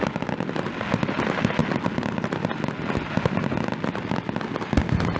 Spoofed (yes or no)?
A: no